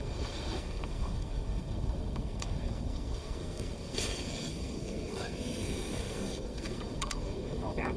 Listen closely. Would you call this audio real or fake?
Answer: fake